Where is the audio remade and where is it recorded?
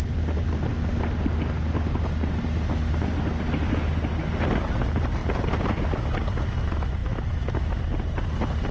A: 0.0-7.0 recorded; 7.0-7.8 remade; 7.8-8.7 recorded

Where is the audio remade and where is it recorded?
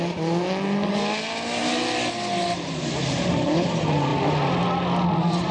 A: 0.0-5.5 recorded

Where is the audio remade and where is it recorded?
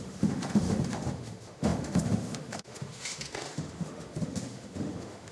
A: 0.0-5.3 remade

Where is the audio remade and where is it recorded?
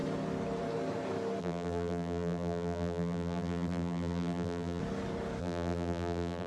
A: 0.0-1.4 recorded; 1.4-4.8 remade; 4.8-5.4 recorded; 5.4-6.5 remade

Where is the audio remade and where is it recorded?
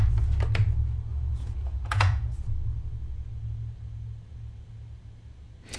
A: 0.0-1.1 recorded; 1.1-2.3 remade; 2.3-5.8 recorded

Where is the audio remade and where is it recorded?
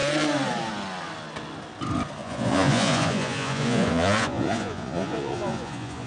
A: 0.0-2.2 recorded; 2.2-6.1 remade